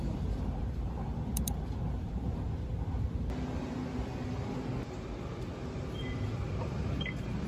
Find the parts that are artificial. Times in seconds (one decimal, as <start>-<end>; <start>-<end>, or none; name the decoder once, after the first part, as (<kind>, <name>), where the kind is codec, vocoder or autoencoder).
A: 0.0-2.3 (vocoder, BigVGAN v2); 6.5-7.5

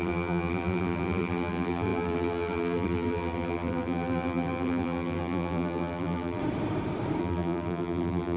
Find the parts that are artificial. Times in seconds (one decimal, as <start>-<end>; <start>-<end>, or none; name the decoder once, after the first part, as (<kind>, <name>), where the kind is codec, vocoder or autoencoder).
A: 0.0-6.4 (vocoder, BigVGAN v2); 7.2-8.4

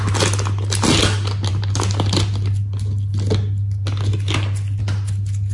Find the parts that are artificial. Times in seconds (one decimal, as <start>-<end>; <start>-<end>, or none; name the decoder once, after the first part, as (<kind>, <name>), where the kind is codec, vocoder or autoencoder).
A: none

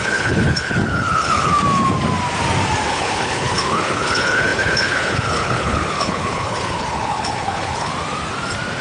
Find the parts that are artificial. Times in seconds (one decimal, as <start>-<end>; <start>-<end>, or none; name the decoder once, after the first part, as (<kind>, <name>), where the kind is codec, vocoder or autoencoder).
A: 0.0-1.5 (codec, HILCodec); 2.9-7.9

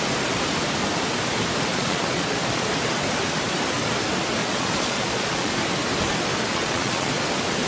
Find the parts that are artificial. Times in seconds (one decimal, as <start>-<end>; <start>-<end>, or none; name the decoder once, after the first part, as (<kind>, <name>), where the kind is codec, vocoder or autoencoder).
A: 1.7-2.7 (vocoder, Vocos); 4.4-5.5; 6.5-7.1

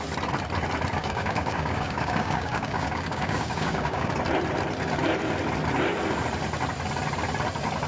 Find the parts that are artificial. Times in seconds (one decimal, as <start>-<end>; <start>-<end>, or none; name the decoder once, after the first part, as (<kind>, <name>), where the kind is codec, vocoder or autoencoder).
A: 1.0-4.1 (codec, DAC)

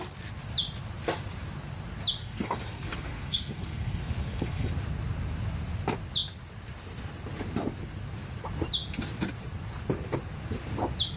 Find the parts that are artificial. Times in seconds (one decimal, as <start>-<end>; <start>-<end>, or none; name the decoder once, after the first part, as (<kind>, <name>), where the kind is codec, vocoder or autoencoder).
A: 2.2-4.7 (codec, SNAC)

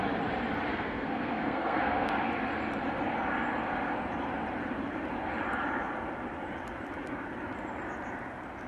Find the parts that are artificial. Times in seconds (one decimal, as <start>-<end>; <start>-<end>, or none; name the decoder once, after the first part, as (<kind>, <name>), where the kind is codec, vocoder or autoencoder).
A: 0.7-2.1 (codec, SNAC)